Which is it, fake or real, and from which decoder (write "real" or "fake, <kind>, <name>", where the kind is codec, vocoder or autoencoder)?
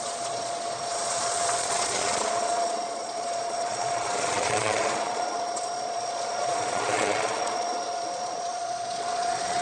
fake, vocoder, Vocos